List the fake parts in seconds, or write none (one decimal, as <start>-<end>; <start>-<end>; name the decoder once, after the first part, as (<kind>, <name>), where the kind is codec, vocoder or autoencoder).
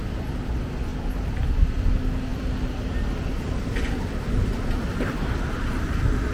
0.0-0.5 (vocoder, BigVGAN v2); 0.9-1.8; 2.3-6.3